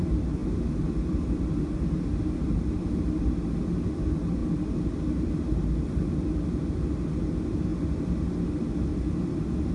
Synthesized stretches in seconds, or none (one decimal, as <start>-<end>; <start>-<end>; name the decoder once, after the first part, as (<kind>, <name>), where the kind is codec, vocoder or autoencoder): none